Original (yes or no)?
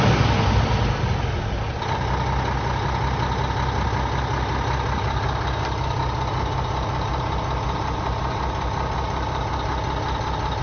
yes